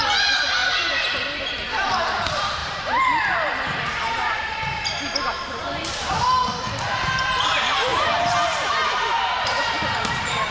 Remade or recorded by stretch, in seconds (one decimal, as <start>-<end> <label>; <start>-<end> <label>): 0.0-6.4 remade; 6.4-7.4 recorded; 7.4-10.5 remade